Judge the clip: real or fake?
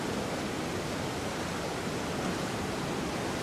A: real